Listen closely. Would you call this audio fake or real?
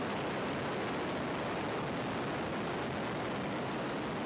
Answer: real